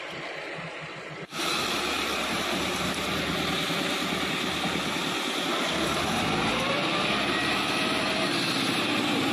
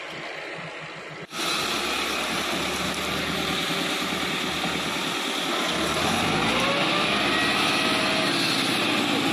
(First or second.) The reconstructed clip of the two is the first